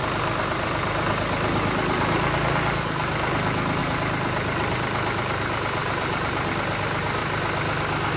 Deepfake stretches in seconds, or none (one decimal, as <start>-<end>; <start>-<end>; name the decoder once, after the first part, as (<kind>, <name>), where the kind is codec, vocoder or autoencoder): 5.8-6.5 (vocoder, BigVGAN v2)